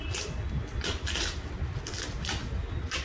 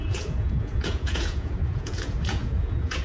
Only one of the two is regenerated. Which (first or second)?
second